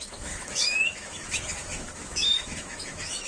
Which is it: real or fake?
fake